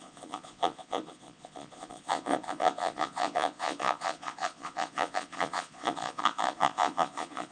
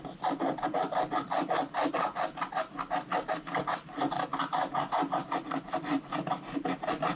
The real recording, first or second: second